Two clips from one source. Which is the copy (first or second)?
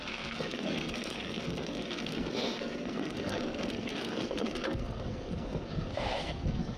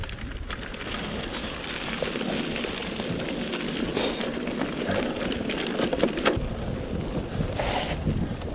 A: first